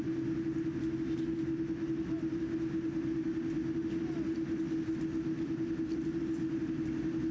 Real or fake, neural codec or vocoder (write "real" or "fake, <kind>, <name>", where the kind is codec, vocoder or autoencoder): real